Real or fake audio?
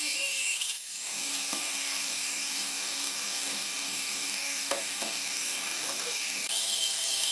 fake